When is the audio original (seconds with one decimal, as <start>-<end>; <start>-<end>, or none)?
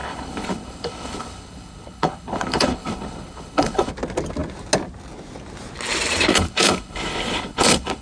3.9-6.3